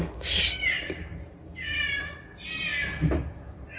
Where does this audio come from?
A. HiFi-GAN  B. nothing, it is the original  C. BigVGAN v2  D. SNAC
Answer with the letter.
B